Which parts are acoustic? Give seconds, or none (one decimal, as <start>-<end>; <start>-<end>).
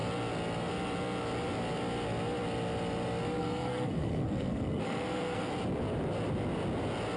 0.0-3.4; 5.5-7.2